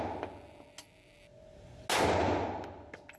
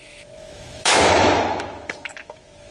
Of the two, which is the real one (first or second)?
first